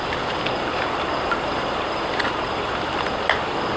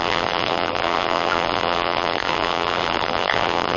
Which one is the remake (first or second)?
second